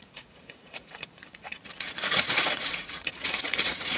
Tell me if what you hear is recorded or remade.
remade